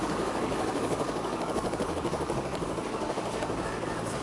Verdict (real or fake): fake